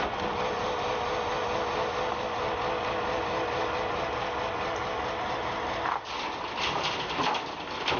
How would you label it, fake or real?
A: real